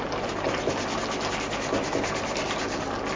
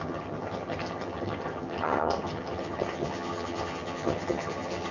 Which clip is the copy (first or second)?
second